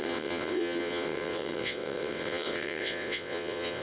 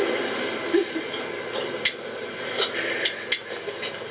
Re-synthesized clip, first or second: first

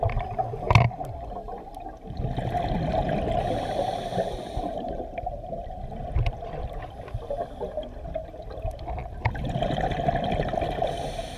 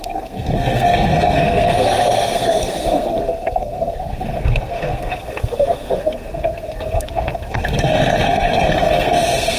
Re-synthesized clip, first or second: second